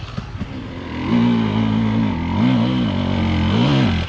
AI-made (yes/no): no